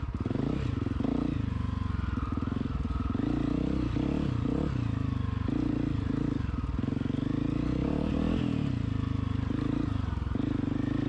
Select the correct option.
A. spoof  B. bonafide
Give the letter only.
B